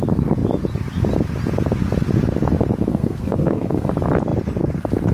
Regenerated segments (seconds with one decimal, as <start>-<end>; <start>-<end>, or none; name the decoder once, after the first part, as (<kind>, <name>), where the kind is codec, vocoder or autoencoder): 2.9-3.9 (codec, SNAC)